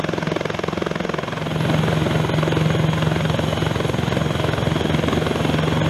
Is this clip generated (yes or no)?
no